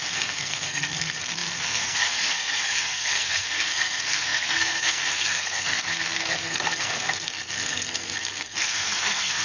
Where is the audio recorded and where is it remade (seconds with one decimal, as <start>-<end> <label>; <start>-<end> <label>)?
0.0-9.4 remade